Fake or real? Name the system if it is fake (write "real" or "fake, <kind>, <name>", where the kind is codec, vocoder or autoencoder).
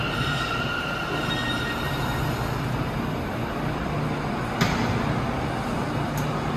real